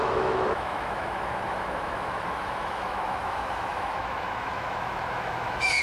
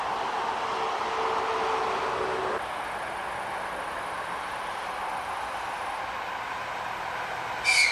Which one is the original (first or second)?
second